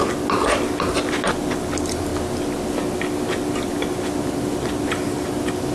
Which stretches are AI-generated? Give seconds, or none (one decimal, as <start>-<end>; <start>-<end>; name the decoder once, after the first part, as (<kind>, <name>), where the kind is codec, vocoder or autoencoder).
none